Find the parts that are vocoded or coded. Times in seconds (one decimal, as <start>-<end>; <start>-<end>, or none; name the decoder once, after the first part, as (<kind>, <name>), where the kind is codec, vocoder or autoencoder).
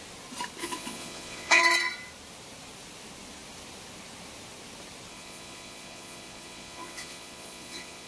0.6-1.6 (vocoder, Vocos); 5.1-8.1